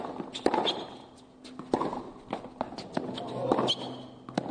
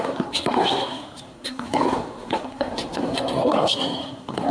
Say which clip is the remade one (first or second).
second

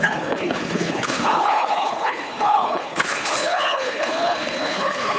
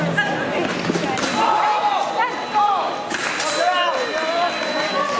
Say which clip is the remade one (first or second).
first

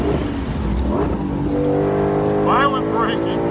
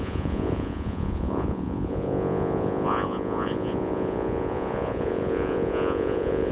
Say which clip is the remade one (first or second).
second